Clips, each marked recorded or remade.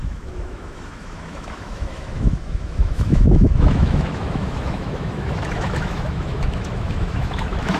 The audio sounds remade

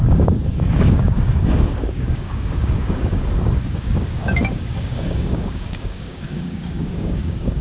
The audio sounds remade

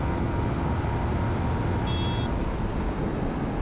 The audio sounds recorded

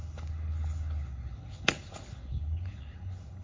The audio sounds remade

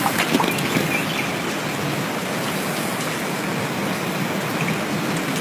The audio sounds recorded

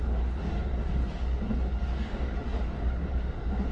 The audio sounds remade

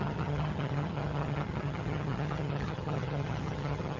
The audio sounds remade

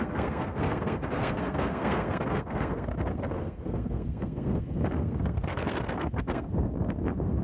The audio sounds remade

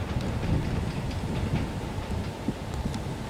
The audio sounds recorded